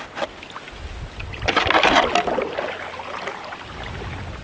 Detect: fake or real real